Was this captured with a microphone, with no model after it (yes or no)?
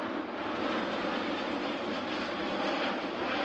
yes